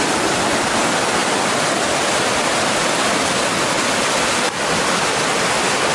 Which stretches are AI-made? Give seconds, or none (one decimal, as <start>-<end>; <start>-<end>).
none